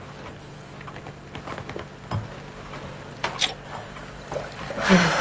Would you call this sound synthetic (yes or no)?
no